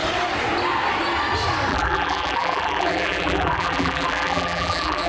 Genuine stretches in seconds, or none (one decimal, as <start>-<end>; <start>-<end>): 0.0-1.7